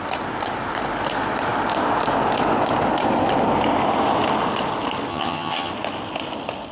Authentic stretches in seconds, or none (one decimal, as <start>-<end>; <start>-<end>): 0.0-5.1; 5.7-6.7